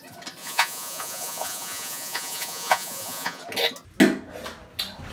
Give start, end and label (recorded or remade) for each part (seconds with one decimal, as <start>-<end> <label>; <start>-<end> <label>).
0.0-0.4 recorded; 0.4-3.4 remade; 3.4-5.1 recorded